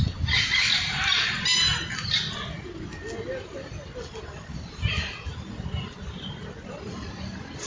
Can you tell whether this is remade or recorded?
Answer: recorded